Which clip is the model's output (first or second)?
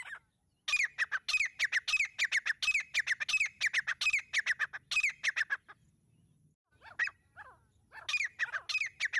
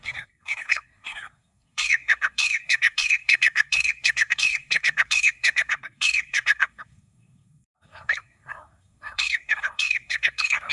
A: second